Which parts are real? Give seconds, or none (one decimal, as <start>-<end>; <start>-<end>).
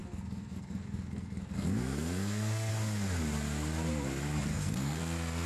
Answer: 2.7-4.5; 5.0-5.5